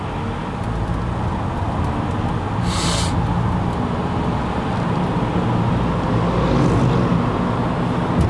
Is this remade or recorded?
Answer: recorded